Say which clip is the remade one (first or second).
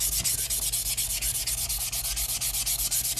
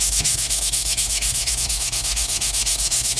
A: second